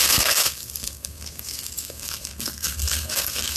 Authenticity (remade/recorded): remade